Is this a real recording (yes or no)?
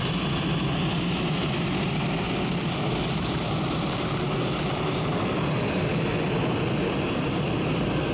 yes